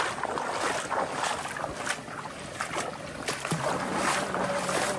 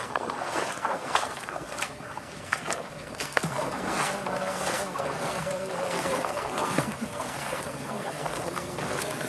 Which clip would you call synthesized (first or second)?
second